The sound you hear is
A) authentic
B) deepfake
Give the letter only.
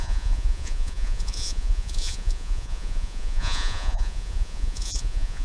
B